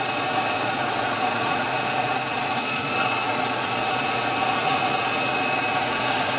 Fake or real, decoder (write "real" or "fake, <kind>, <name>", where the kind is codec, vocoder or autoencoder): fake, vocoder, Vocos